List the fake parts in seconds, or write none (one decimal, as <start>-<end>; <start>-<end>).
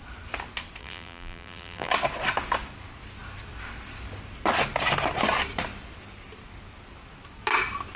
0.8-1.9